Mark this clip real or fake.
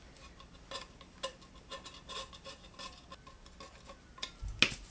real